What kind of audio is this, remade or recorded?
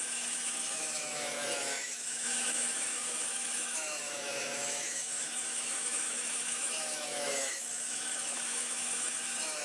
remade